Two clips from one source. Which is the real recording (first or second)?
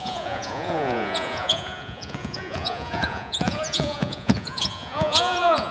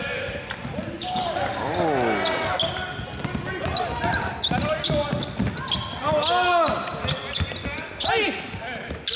second